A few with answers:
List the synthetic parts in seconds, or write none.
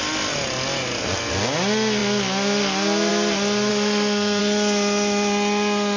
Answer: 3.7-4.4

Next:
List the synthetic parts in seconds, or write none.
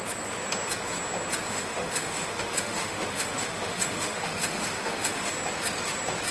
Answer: 1.5-5.3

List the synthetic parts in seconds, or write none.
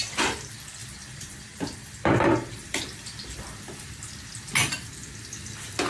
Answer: 0.8-4.0; 4.6-5.3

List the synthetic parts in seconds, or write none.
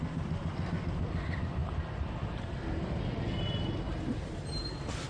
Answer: none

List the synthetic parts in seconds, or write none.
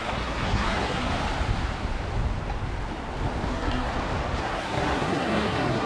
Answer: 0.0-1.1; 3.5-3.9; 4.4-5.9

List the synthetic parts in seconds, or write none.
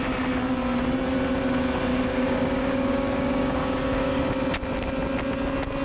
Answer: 1.9-4.2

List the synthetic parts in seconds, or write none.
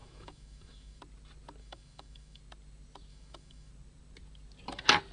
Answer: 0.0-1.0; 1.6-2.4; 3.1-3.7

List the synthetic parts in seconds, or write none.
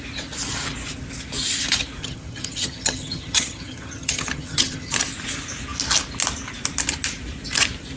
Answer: 2.0-4.9